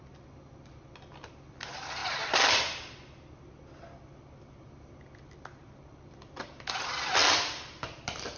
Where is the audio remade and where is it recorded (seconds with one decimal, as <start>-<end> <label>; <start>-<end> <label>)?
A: 0.0-8.4 recorded

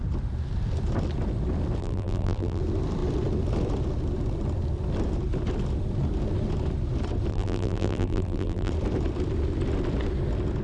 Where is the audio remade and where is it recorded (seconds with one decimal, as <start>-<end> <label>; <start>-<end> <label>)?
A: 0.0-1.8 recorded; 1.8-2.6 remade; 2.6-7.3 recorded; 7.3-8.7 remade; 8.7-10.6 recorded

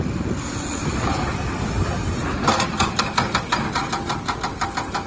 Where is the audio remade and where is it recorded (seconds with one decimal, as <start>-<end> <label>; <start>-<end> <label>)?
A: 0.0-0.8 recorded; 0.8-1.3 remade; 1.3-2.0 recorded; 2.0-4.6 remade; 4.6-5.1 recorded

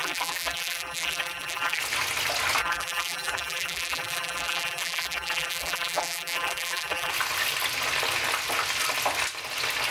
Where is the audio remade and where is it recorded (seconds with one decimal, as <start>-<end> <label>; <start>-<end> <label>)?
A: 0.0-1.8 remade; 1.8-2.6 recorded; 2.6-7.1 remade; 7.1-9.9 recorded

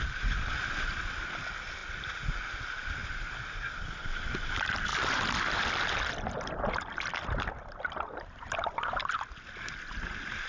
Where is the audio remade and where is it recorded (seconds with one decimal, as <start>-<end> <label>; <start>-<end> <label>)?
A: 0.0-1.8 remade; 1.8-2.5 recorded; 2.5-10.5 remade